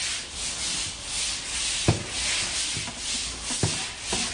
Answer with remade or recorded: recorded